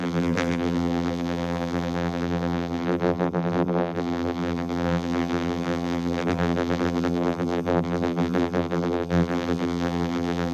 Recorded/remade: remade